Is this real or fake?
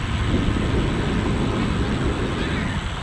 real